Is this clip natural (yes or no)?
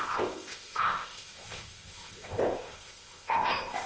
no